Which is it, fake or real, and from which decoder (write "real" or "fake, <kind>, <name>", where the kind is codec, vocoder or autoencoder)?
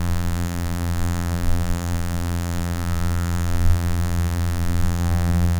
fake, vocoder, BigVGAN v2